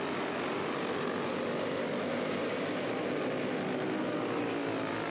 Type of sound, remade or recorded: recorded